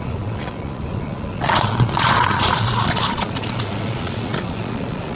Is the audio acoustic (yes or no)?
no